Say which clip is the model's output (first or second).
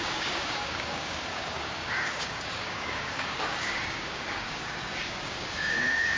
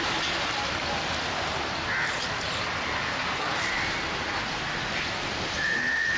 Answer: first